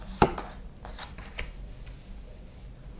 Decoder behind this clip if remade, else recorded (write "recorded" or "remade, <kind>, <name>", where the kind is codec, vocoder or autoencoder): remade, vocoder, BigVGAN v2